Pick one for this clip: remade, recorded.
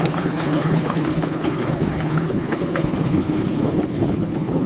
remade